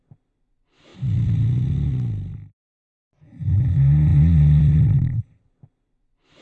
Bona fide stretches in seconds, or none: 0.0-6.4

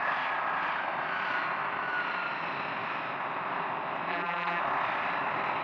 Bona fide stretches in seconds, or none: 0.0-4.1; 4.6-5.6